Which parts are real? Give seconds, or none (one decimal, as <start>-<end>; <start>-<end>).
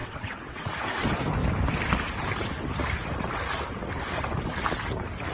0.7-5.3